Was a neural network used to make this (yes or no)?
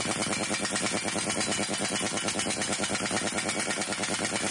no